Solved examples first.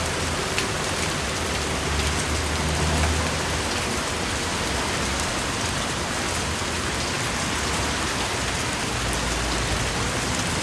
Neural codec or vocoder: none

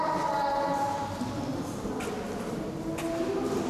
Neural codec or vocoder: none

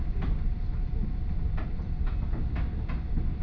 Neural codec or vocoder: none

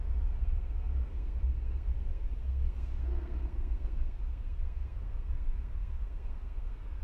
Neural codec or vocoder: codec, SNAC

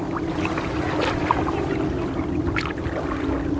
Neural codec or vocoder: none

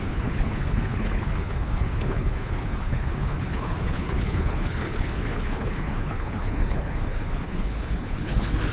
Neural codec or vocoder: codec, HILCodec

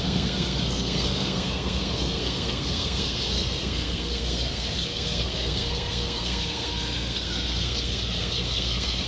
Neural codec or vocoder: codec, SNAC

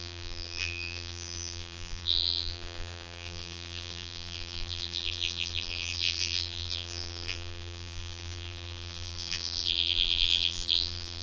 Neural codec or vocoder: vocoder, BigVGAN v2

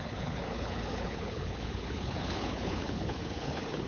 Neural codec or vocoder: codec, HILCodec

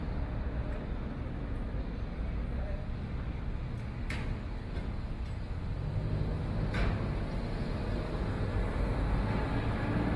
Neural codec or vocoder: none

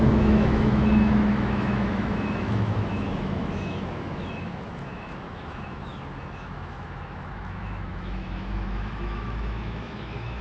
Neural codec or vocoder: autoencoder, DAC-VAE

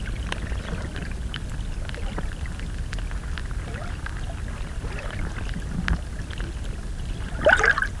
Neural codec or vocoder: none